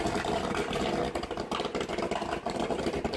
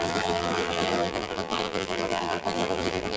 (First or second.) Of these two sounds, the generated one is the second